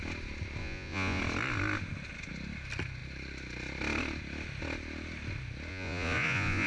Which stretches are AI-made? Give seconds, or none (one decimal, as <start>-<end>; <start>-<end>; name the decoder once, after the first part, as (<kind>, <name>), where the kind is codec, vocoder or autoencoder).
0.6-1.2 (vocoder, Vocos); 5.7-6.7